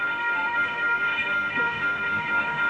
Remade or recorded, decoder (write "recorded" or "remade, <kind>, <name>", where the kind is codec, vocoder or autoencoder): remade, autoencoder, DAC-VAE